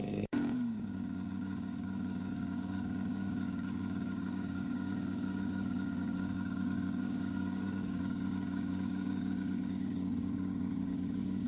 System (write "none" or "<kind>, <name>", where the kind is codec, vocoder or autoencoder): codec, DAC